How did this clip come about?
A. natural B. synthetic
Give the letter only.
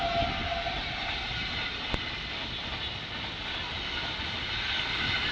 A